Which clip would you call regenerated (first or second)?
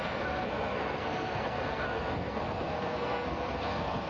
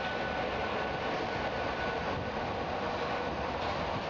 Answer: first